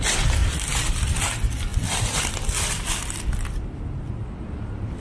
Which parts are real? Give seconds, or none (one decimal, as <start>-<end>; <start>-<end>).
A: 0.0-5.0